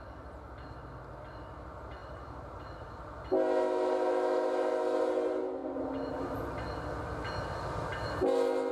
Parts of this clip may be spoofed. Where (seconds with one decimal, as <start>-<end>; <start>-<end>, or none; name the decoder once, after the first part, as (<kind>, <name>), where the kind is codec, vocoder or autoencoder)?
2.0-2.9 (vocoder, BigVGAN v2); 5.6-6.5